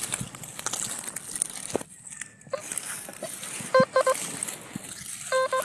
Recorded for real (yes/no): yes